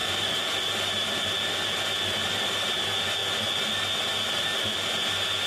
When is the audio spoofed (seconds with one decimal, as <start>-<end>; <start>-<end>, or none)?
0.0-1.2; 2.2-2.8